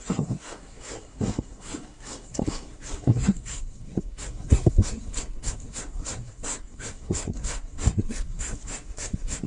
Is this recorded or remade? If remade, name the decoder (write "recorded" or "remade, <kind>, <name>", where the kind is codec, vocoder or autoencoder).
remade, codec, SNAC